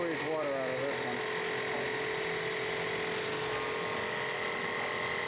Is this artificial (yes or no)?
no